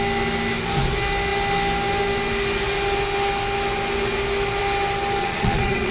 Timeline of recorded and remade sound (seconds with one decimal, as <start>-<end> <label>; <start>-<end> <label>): 0.0-5.2 recorded; 5.2-5.9 remade